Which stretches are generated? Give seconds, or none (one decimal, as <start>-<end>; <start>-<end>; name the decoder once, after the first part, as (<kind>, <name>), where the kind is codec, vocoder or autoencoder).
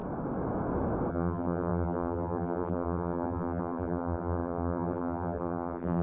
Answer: 1.1-6.0 (vocoder, BigVGAN v2)